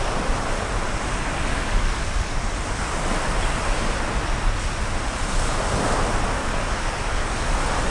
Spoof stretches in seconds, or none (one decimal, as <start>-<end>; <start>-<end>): 1.5-2.4; 6.4-7.5